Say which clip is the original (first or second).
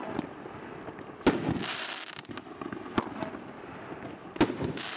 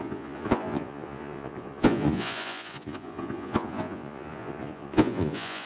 first